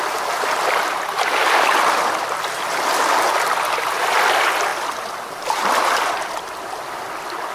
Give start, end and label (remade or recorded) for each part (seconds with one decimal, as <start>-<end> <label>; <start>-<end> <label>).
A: 0.0-7.5 recorded